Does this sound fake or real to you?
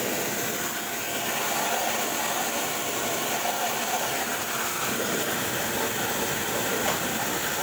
real